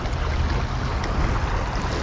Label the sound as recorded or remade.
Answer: recorded